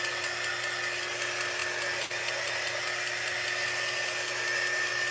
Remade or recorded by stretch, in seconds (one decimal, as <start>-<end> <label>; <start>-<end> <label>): 0.0-5.1 recorded